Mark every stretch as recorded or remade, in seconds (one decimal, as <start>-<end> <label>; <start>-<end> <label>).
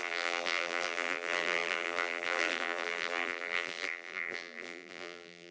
0.0-5.5 remade